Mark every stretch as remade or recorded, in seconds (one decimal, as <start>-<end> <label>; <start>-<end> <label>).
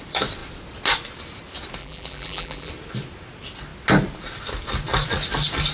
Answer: 0.0-1.8 recorded; 1.8-2.7 remade; 2.7-5.7 recorded